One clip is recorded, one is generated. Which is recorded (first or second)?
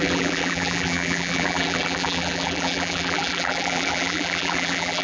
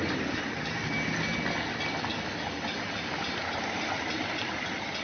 second